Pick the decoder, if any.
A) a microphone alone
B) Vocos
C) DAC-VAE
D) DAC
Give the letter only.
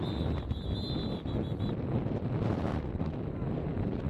A